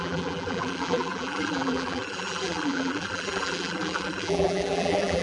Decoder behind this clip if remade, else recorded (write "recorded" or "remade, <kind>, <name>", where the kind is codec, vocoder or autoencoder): remade, vocoder, BigVGAN v2